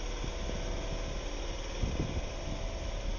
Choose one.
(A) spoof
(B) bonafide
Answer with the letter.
B